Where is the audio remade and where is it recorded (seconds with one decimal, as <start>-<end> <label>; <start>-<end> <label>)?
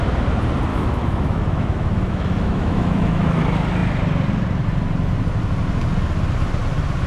0.0-0.7 recorded; 0.7-3.4 remade; 3.4-7.1 recorded